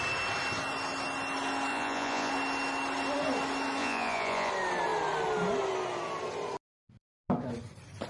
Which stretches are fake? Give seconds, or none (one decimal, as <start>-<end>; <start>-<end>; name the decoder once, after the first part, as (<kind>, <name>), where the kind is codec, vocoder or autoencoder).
1.7-2.3 (vocoder, Vocos); 3.8-4.5